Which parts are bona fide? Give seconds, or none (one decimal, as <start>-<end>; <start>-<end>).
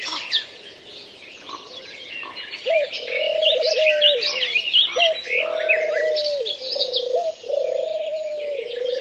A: 3.3-6.8